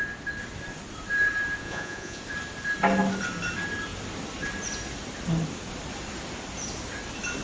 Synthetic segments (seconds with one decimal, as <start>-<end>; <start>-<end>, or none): 1.6-2.2